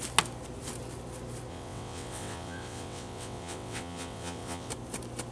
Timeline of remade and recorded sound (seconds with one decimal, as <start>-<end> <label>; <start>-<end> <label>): 0.0-1.5 recorded; 1.5-4.7 remade; 4.7-5.3 recorded